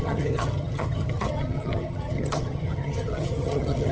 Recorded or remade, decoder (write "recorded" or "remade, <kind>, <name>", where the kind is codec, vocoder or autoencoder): remade, vocoder, HiFi-GAN